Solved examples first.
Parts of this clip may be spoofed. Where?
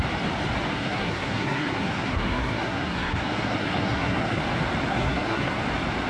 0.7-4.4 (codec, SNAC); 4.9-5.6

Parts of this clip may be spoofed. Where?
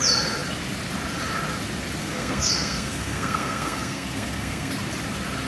2.0-4.7 (codec, SNAC)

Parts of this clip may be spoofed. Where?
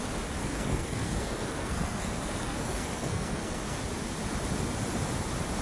0.4-3.8 (codec, SNAC)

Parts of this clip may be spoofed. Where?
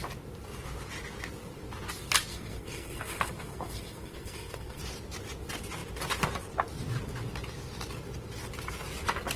2.3-4.8 (codec, SNAC)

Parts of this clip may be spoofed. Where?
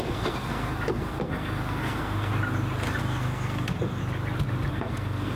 0.0-2.3 (codec, SNAC); 3.0-4.0; 4.7-5.4